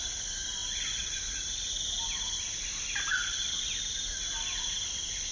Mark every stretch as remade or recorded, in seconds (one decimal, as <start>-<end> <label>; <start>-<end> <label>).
0.0-5.3 recorded